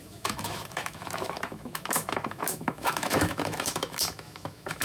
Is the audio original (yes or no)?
no